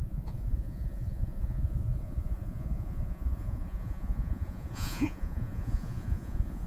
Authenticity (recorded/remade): remade